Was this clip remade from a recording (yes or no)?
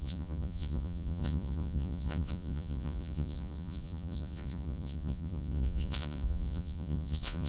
yes